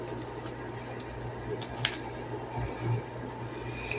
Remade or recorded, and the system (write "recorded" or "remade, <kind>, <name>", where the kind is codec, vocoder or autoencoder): recorded